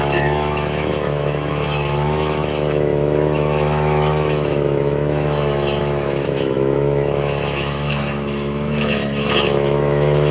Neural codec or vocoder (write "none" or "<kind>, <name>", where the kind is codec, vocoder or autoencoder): autoencoder, DAC-VAE